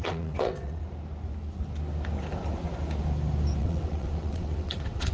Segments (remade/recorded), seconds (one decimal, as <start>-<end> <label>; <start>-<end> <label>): 0.0-0.8 remade; 0.8-3.6 recorded; 3.6-5.1 remade